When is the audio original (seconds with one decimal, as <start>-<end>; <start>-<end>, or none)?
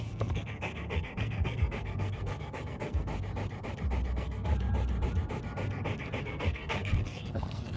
3.1-4.1; 4.5-6.2